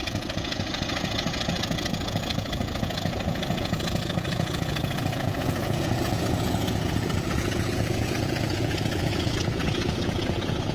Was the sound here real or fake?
fake